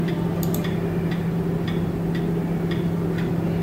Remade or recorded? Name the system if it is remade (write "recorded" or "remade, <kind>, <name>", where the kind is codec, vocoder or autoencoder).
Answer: remade, vocoder, BigVGAN v2